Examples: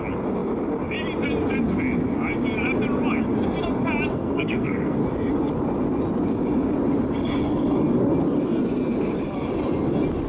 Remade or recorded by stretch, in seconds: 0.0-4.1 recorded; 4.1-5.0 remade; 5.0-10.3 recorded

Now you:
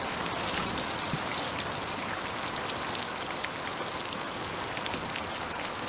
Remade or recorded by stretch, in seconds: 0.0-5.9 recorded